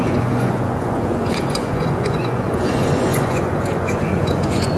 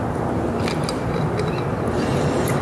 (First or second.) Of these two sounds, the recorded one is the second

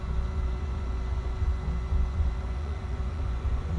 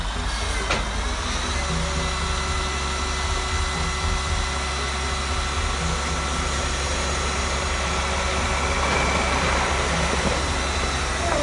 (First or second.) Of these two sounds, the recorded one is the second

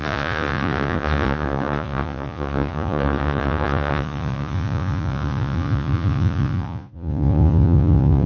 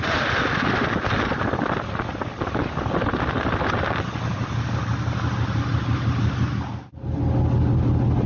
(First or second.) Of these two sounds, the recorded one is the second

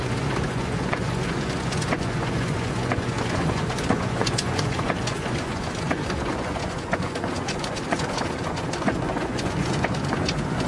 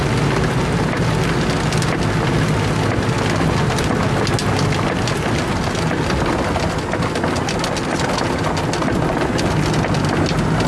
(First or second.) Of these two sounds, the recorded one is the second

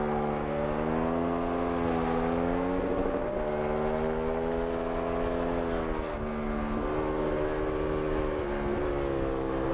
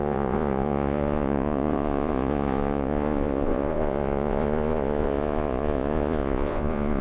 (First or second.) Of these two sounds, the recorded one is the first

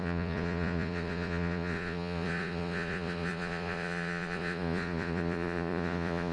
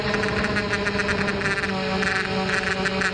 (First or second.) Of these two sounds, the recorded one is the second